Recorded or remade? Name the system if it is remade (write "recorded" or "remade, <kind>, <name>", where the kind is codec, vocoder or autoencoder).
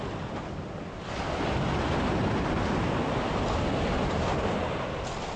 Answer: recorded